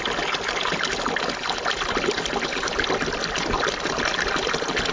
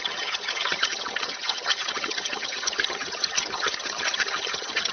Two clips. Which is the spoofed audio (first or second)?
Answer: second